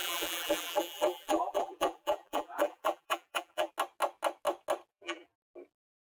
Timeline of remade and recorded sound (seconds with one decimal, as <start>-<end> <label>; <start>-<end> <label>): 0.0-3.7 remade; 3.7-4.9 recorded; 4.9-5.4 remade; 5.4-6.1 recorded